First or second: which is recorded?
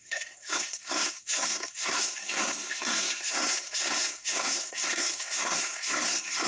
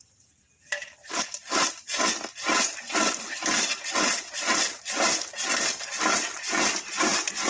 second